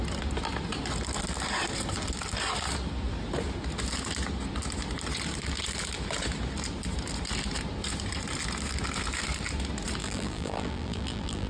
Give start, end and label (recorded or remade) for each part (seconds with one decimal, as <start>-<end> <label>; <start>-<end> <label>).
0.0-10.0 recorded; 10.0-11.5 remade